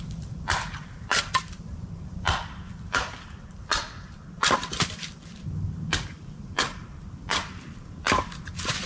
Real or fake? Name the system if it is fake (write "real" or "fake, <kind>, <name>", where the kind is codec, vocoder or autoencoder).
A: fake, vocoder, BigVGAN v2